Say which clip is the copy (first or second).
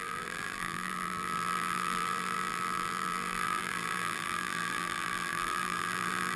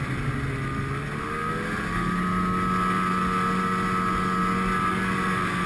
first